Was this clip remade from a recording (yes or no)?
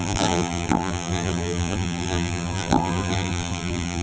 yes